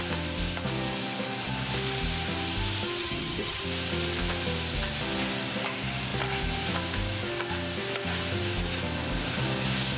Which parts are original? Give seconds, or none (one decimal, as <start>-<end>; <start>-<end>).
0.0-3.0; 3.6-10.0